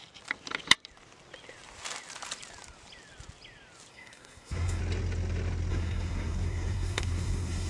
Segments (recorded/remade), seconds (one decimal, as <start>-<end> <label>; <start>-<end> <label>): 0.0-3.9 recorded; 3.9-4.8 remade; 4.8-5.7 recorded; 5.7-7.7 remade